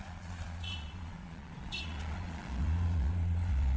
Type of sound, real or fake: fake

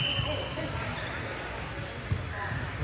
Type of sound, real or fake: real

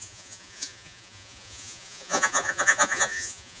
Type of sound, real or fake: fake